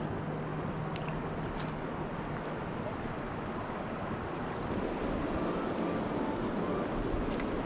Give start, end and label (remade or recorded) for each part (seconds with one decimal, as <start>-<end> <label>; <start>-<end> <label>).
0.0-7.7 recorded